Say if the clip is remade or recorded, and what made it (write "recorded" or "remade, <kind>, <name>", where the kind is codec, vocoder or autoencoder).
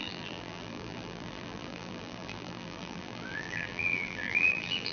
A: remade, vocoder, BigVGAN v2